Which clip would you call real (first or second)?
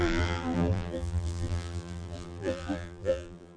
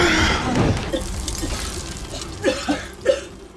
second